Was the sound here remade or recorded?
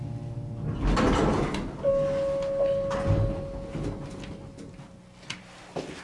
recorded